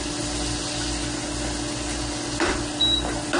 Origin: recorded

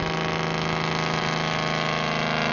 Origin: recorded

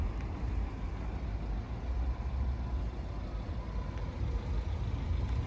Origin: recorded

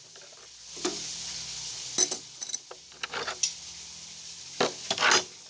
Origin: recorded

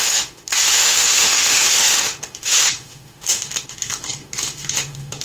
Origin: remade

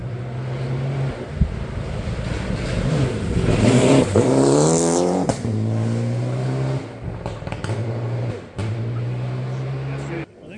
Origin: recorded